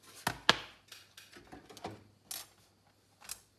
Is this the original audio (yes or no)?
yes